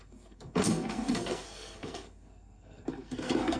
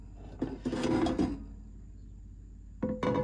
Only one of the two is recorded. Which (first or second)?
second